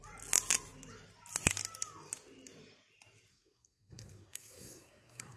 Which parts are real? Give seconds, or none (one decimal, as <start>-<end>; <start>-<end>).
0.0-3.3

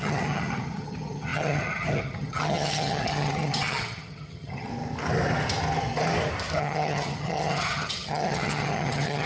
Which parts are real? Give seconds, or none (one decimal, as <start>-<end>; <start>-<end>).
4.7-6.6

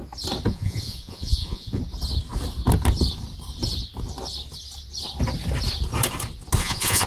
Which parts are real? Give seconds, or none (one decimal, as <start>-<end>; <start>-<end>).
0.0-0.5; 1.8-6.6

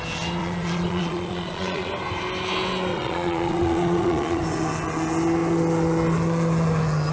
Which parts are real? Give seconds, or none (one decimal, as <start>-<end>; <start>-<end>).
0.0-0.4; 1.9-2.9; 4.4-7.1

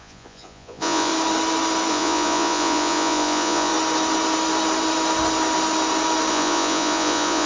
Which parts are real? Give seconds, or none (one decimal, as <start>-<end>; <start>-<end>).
1.1-1.9; 3.7-6.3

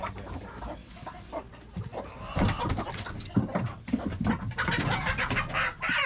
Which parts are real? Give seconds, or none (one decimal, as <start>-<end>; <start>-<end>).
0.0-6.1